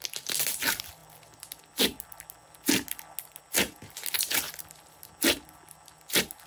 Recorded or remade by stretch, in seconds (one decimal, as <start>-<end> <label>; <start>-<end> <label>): 0.0-6.5 recorded